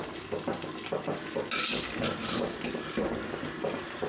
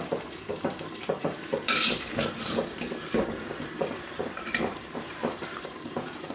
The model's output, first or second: second